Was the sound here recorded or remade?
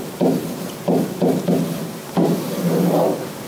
recorded